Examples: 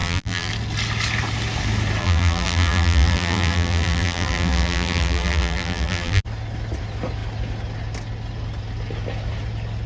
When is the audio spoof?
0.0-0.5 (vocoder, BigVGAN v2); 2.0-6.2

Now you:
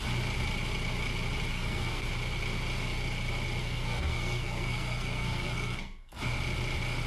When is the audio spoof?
1.5-2.1 (codec, SNAC); 3.6-6.2

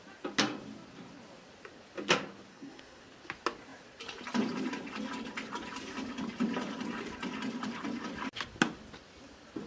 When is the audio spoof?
2.5-3.0 (codec, SNAC)

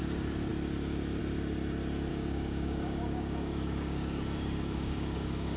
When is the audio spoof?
2.1-5.6 (codec, DAC)

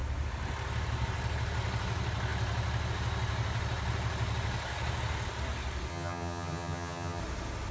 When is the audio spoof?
5.9-7.2 (vocoder, HiFi-GAN)